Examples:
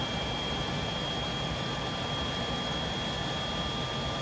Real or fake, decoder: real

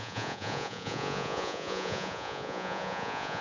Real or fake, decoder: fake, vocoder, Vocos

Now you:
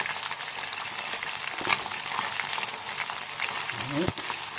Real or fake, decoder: real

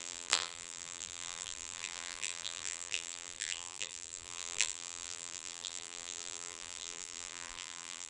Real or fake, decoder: fake, vocoder, BigVGAN v2